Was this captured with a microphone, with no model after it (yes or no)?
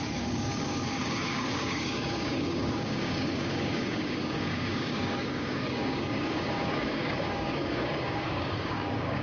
no